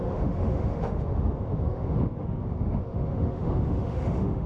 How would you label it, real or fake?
fake